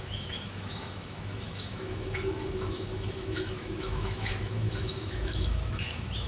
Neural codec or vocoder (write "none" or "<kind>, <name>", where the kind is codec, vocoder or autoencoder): autoencoder, DAC-VAE